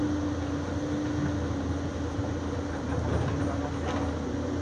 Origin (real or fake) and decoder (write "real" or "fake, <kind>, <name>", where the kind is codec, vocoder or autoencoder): real